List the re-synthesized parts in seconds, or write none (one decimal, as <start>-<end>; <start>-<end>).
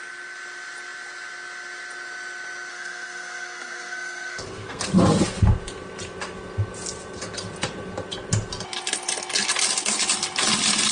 2.7-4.8